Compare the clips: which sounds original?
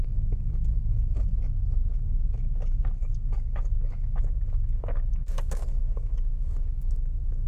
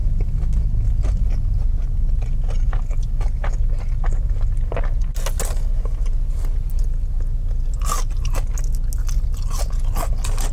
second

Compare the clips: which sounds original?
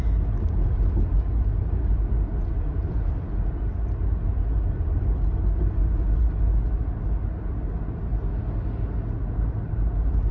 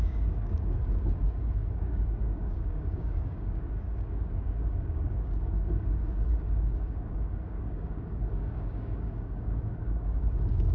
first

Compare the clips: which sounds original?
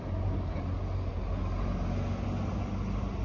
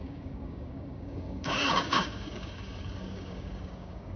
first